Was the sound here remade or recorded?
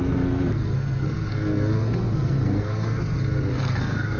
remade